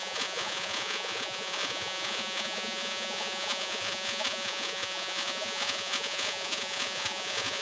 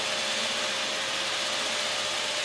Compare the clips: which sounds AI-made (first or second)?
first